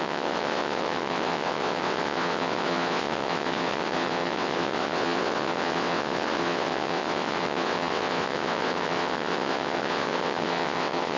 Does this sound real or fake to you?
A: fake